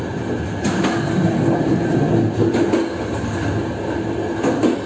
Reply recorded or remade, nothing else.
recorded